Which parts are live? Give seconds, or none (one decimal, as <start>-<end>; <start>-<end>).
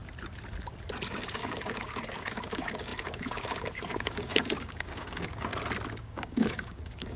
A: 0.0-1.1; 5.5-6.0